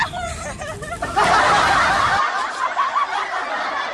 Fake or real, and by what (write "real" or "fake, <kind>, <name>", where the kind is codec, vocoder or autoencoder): real